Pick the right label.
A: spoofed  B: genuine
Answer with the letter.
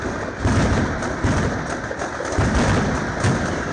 B